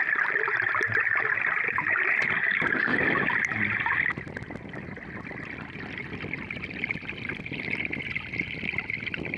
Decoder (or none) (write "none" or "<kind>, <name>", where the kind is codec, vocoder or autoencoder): none